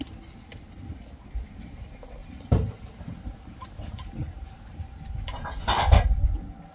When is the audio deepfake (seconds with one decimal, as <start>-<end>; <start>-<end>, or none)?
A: 2.2-6.2